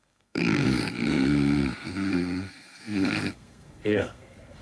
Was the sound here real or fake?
fake